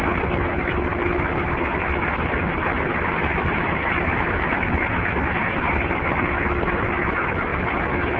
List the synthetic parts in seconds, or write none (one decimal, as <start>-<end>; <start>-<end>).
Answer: none